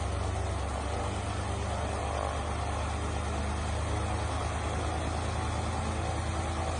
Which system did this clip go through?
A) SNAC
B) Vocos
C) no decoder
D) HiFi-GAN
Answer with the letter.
C